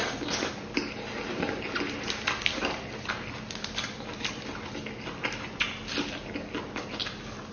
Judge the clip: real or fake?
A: real